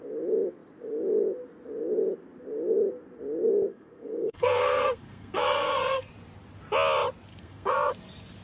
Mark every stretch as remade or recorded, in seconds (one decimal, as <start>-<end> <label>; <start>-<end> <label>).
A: 0.0-3.7 recorded; 3.7-6.1 remade; 6.1-7.3 recorded; 7.3-7.9 remade; 7.9-8.4 recorded